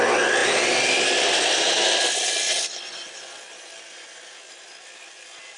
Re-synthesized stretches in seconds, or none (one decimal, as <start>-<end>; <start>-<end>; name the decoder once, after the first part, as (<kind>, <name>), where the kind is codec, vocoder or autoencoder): none